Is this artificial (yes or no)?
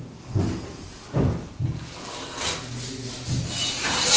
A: no